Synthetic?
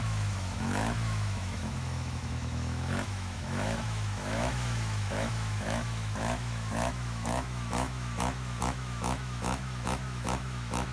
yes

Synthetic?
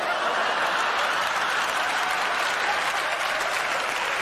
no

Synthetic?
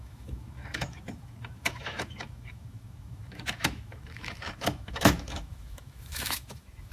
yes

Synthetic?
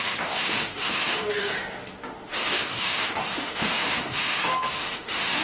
yes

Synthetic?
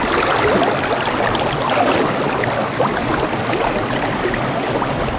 no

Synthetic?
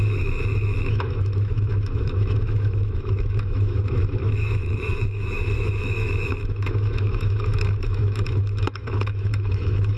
yes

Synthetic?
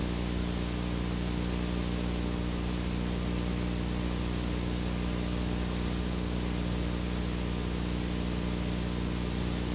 no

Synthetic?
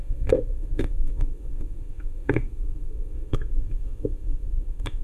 yes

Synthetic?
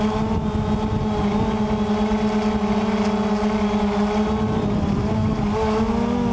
no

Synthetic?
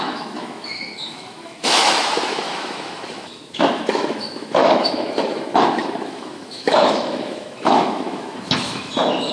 yes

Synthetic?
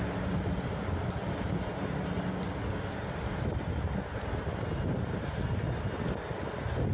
no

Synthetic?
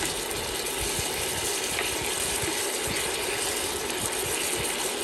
no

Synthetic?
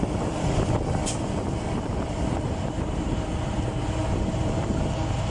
no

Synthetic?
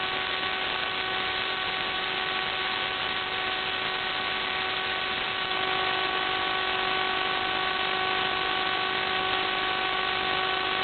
no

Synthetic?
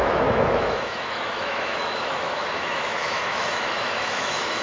yes